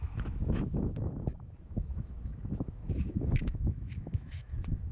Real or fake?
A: fake